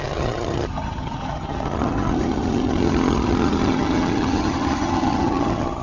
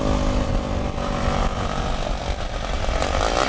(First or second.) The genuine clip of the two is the second